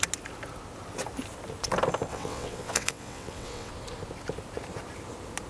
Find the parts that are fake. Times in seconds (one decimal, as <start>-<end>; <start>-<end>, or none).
2.1-3.7